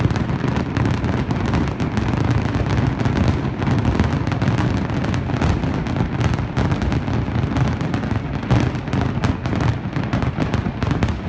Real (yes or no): yes